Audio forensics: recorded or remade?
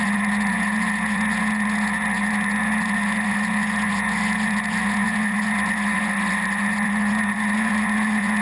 remade